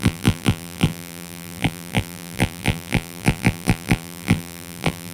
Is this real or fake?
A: fake